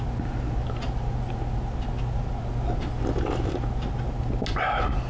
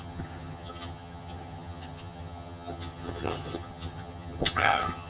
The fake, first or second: second